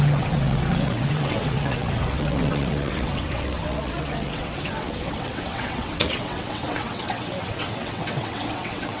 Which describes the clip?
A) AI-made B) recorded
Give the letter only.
A